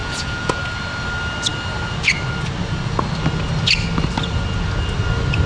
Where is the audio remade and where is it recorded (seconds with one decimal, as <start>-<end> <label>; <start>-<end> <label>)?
0.0-0.6 remade; 0.6-5.5 recorded